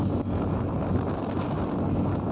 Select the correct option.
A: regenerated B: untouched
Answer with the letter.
B